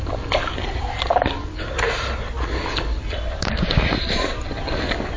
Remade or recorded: recorded